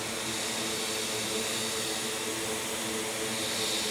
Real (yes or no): yes